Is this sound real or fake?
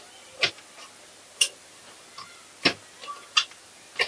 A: real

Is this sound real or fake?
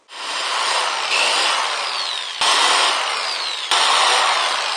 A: real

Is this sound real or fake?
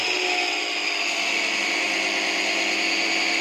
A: real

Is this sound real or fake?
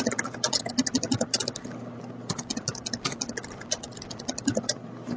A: real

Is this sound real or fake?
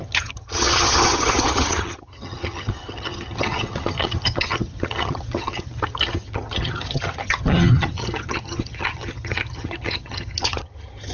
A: fake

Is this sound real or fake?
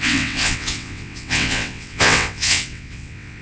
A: fake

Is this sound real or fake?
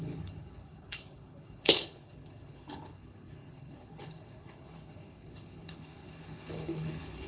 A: fake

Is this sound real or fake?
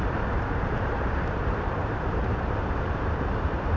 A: fake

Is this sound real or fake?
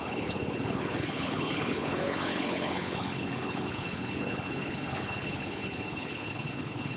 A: fake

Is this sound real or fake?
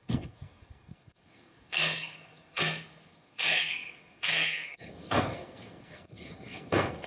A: fake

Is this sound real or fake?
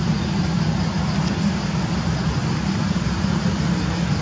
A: real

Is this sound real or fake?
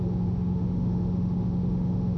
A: fake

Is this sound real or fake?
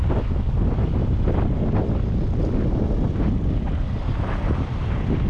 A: real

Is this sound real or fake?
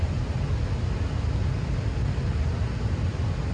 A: real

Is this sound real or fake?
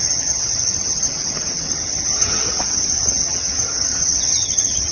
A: fake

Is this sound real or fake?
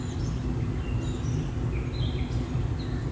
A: real